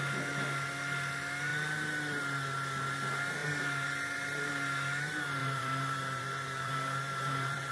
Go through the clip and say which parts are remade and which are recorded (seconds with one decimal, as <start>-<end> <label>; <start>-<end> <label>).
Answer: 0.0-3.4 recorded; 3.4-4.5 remade; 4.5-5.4 recorded; 5.4-7.7 remade